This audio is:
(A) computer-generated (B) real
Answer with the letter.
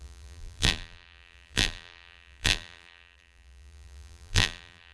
A